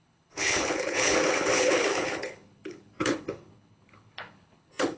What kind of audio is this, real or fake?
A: fake